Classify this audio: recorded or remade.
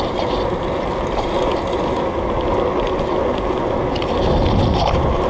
recorded